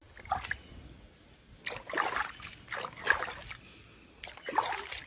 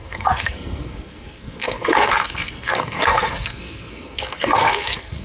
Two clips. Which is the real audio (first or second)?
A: first